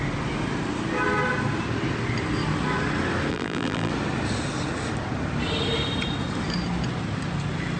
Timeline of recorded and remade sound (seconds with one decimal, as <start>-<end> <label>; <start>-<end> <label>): 0.0-3.3 recorded; 3.3-3.9 remade; 3.9-7.8 recorded